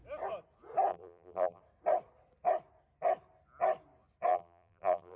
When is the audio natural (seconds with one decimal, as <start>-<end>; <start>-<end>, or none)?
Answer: 0.0-0.9; 1.6-4.3